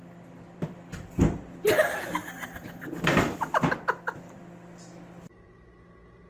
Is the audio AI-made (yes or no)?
no